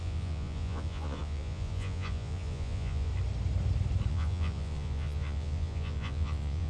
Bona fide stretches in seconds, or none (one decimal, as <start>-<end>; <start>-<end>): 3.1-4.1